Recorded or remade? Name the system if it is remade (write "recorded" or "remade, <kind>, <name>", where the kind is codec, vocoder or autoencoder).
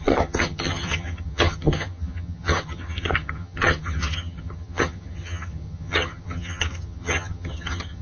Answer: remade, vocoder, HiFi-GAN